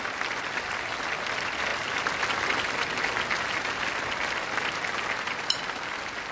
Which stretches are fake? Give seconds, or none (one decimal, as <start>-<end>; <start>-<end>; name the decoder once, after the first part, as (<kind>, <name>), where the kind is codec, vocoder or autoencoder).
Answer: none